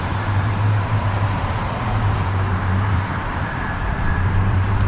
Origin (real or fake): fake